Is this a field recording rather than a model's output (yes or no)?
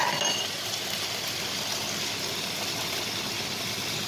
yes